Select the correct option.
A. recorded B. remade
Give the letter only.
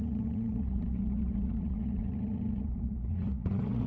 B